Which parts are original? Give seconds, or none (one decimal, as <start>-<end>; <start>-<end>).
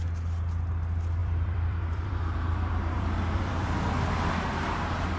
0.0-1.2; 4.3-5.2